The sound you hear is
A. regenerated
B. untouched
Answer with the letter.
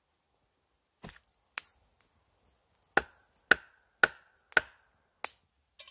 B